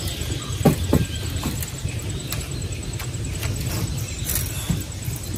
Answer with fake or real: real